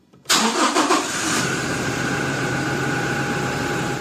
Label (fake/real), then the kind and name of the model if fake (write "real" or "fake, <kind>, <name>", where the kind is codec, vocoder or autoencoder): fake, vocoder, BigVGAN v2